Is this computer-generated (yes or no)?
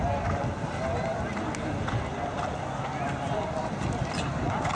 no